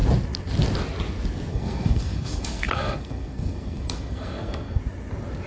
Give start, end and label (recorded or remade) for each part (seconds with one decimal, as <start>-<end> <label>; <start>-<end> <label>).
0.0-1.5 recorded; 1.5-4.8 remade; 4.8-5.5 recorded